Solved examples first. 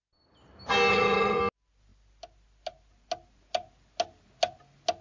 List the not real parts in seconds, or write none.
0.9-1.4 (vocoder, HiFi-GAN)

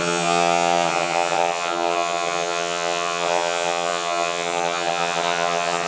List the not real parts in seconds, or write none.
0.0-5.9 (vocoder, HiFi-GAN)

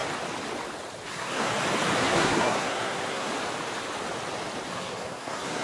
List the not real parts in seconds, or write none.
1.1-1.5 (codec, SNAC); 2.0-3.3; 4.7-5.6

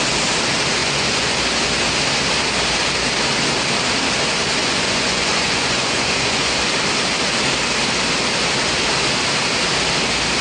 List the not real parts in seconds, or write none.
0.8-1.4 (vocoder, Vocos); 4.6-6.7

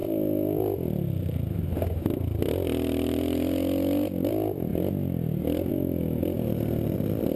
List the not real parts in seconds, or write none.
4.3-4.7 (vocoder, BigVGAN v2); 5.7-7.4

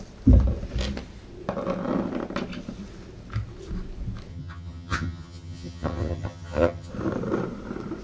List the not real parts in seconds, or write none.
4.3-6.9 (vocoder, HiFi-GAN)

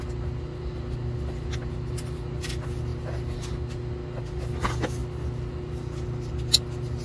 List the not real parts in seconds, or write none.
none

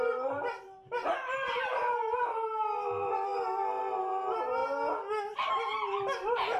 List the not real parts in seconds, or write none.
0.0-3.3 (vocoder, BigVGAN v2); 3.8-4.6; 5.5-6.6